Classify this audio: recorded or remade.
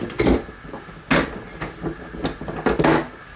recorded